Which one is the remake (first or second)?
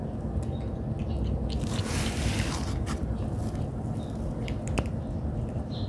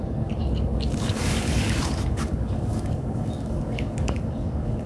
second